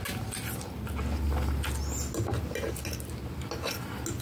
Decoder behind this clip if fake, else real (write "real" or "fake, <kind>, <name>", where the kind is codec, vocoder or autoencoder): real